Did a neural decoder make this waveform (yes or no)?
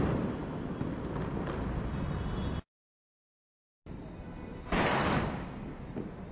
no